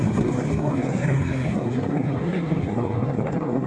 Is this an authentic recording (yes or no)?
no